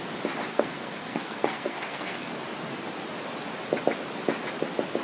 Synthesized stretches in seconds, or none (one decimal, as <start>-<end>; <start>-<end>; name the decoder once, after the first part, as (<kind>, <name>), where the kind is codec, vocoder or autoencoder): 0.5-2.3 (codec, SNAC)